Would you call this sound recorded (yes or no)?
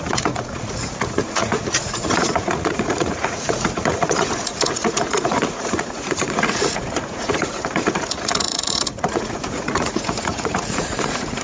no